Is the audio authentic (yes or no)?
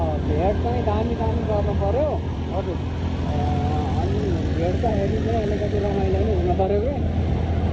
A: yes